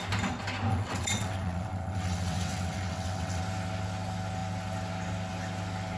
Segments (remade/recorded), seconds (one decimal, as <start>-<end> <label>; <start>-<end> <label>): 0.0-0.7 recorded; 0.7-3.4 remade; 3.4-6.0 recorded